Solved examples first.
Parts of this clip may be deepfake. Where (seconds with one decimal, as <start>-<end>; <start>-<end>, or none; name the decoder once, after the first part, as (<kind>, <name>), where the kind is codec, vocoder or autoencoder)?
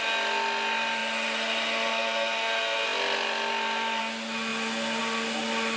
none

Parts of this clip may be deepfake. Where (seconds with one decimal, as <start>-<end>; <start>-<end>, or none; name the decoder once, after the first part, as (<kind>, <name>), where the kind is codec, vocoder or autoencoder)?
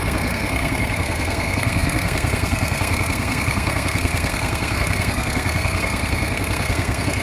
0.0-7.2 (codec, SNAC)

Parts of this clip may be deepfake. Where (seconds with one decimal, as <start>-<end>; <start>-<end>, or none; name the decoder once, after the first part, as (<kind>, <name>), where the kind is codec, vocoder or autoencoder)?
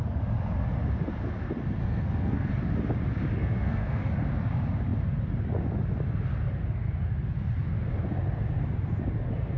1.8-2.5 (codec, SNAC); 3.4-4.1